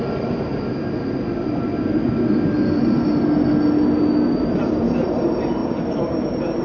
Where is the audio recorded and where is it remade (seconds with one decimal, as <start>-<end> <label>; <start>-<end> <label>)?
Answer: 0.0-0.5 remade; 0.5-4.5 recorded; 4.5-6.6 remade

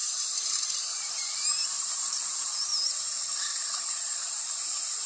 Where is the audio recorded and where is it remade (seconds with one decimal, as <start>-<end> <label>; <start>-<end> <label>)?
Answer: 0.0-2.7 remade; 2.7-3.4 recorded; 3.4-5.1 remade

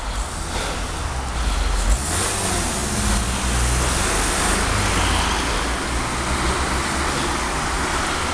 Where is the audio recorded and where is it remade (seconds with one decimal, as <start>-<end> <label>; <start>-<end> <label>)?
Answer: 0.0-8.3 recorded